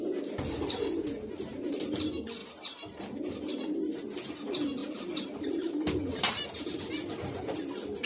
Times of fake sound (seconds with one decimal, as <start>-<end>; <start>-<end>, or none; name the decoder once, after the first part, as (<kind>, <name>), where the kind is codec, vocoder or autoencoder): 4.8-6.5 (vocoder, BigVGAN v2)